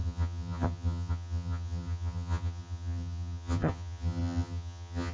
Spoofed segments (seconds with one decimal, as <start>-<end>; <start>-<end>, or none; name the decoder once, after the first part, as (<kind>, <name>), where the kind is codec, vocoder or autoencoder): 0.0-5.1 (vocoder, HiFi-GAN)